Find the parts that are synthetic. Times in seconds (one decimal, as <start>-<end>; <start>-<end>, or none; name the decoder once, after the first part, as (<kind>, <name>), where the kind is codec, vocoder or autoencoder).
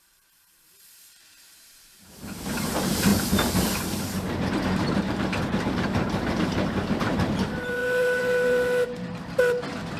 0.0-7.8 (vocoder, BigVGAN v2)